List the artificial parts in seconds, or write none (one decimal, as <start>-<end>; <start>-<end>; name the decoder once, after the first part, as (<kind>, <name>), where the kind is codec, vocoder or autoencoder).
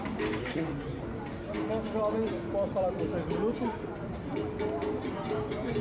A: 0.4-1.0 (codec, SNAC)